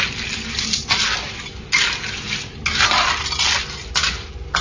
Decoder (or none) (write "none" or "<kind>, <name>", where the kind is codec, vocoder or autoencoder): none